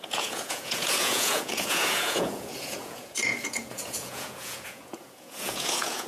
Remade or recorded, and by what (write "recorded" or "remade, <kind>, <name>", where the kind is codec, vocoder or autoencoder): remade, vocoder, Vocos